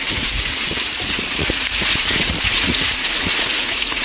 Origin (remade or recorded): remade